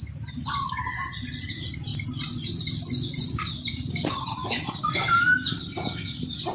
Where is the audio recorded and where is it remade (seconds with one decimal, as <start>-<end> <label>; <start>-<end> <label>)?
0.0-4.4 recorded; 4.4-5.1 remade; 5.1-6.5 recorded